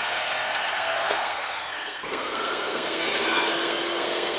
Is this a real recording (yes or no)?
no